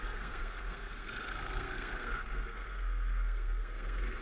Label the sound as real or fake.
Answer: fake